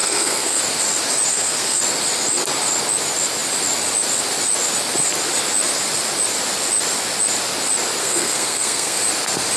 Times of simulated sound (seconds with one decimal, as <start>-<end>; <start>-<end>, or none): 0.0-0.6; 1.3-1.8; 8.0-9.0